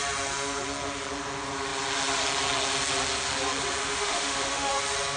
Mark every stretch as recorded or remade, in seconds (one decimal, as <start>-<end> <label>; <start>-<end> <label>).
0.0-3.8 recorded; 3.8-4.8 remade; 4.8-5.2 recorded